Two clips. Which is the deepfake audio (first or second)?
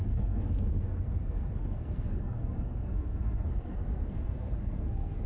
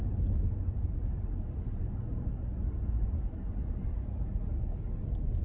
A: first